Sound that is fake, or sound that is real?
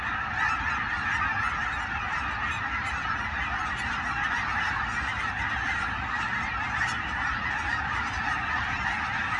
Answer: real